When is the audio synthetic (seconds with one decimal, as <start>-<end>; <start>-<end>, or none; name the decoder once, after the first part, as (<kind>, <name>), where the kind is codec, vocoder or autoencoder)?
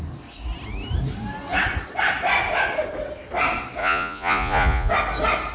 3.8-4.9 (vocoder, Vocos)